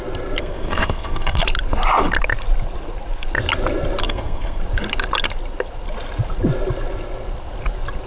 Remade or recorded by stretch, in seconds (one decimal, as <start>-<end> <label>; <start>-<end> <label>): 0.0-0.4 recorded; 0.4-1.4 remade; 1.4-4.0 recorded; 4.0-4.6 remade; 4.6-8.1 recorded